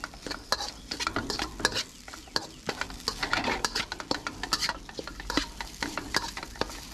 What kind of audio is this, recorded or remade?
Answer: recorded